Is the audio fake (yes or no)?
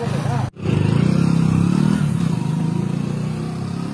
no